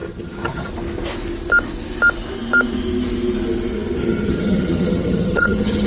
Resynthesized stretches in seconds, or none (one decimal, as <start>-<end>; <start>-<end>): 0.0-0.7; 4.0-5.9